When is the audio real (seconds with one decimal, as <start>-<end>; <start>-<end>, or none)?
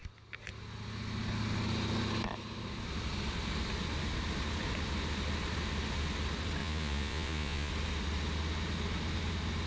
0.0-6.6; 7.7-9.7